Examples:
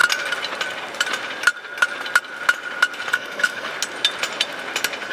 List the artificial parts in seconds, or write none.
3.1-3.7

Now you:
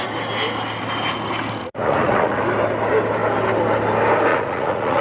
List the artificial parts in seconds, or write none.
1.6-2.4; 4.3-5.0